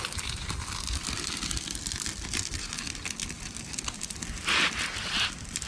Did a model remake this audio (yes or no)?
no